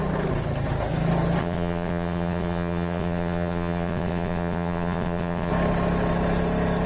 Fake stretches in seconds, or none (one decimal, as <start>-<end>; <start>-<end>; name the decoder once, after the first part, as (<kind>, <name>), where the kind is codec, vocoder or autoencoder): 1.4-5.5 (vocoder, WaveNeXt)